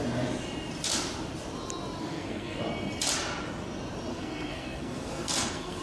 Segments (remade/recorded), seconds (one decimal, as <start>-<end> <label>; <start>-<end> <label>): 0.0-2.0 recorded; 2.0-2.6 remade; 2.6-4.1 recorded; 4.1-5.8 remade